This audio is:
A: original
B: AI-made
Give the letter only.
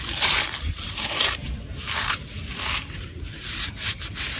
B